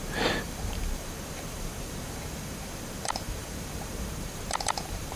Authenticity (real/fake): fake